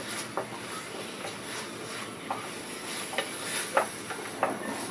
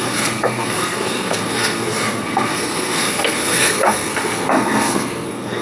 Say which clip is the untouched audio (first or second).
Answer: first